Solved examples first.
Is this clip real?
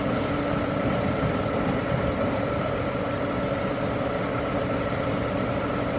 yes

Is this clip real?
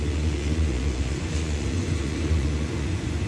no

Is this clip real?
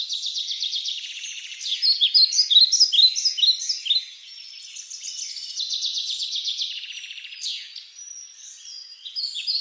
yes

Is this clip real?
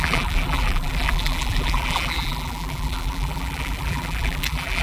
no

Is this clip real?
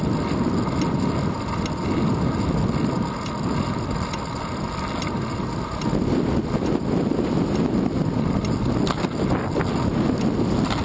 yes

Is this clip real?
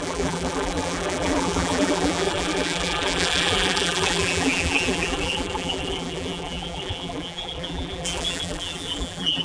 no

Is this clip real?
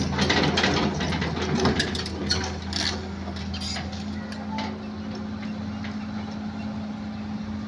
yes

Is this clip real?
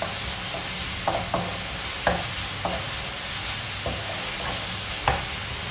yes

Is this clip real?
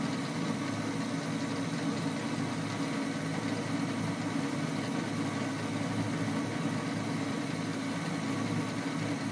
yes